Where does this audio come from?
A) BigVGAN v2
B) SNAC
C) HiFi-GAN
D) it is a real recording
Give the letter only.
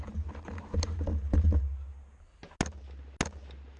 D